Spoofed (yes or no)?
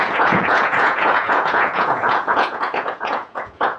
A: yes